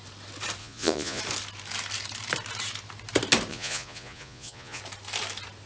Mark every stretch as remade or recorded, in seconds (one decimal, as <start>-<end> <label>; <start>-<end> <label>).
0.0-0.6 recorded; 0.6-1.2 remade; 1.2-3.5 recorded; 3.5-4.8 remade; 4.8-5.7 recorded